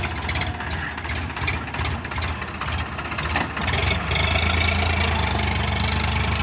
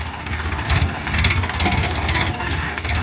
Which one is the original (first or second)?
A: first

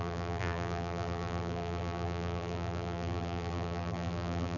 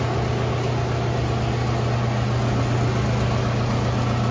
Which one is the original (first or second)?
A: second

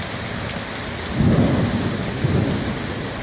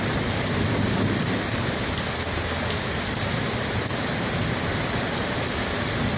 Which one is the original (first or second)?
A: first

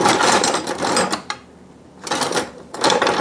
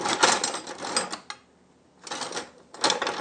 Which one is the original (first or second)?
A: second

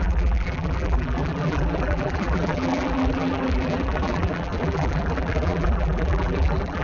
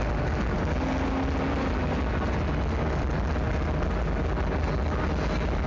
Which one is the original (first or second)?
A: second